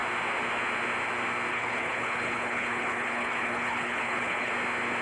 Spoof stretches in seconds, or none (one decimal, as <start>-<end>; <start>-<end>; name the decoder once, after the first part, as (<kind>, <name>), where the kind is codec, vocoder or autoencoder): 1.5-4.5 (codec, HILCodec)